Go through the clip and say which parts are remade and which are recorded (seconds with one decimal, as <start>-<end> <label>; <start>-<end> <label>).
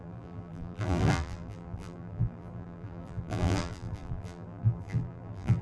0.0-5.6 remade